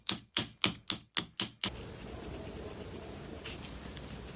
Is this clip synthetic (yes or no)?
no